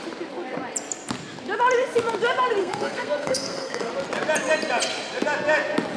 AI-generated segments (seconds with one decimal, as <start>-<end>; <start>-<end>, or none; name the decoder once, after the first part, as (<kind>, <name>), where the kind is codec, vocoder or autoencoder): 2.6-3.9 (codec, SNAC)